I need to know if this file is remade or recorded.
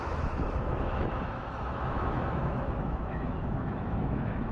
remade